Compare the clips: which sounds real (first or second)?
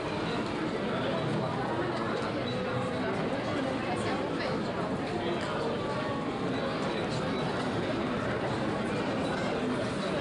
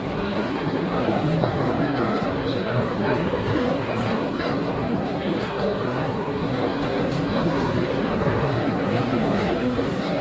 first